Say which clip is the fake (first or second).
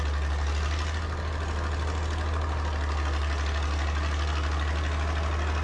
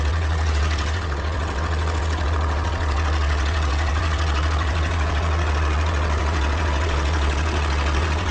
second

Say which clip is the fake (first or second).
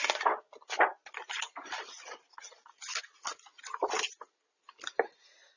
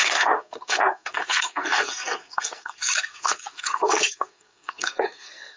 second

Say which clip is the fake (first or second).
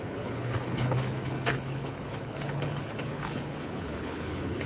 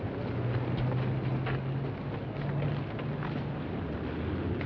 first